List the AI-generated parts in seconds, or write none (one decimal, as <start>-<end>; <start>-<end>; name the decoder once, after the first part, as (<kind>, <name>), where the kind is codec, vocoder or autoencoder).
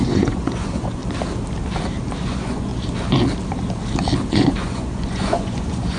0.0-1.0 (vocoder, Vocos); 2.2-2.7; 4.3-6.0